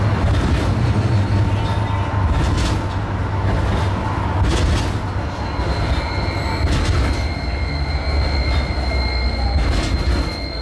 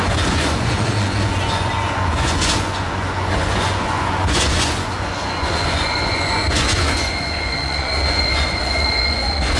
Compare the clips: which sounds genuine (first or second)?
first